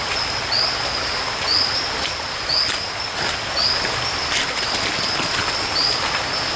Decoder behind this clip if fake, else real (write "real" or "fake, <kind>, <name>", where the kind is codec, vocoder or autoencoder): real